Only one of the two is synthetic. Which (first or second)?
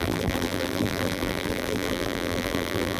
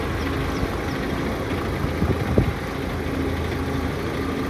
first